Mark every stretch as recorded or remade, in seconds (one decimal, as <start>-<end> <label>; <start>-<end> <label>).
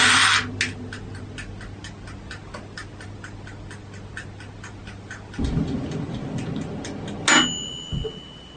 0.0-8.6 recorded